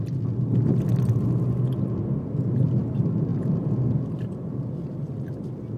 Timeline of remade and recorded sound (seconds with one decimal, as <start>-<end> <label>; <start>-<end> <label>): 0.0-5.8 recorded